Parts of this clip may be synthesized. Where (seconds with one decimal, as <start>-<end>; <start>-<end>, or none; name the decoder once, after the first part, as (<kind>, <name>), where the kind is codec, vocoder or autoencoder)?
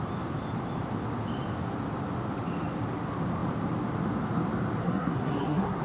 4.8-5.8 (codec, SNAC)